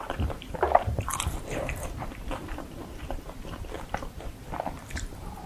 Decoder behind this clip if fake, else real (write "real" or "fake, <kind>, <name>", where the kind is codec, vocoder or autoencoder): fake, vocoder, BigVGAN v2